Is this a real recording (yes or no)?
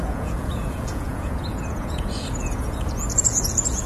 no